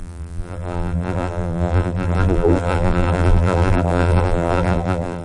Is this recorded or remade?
remade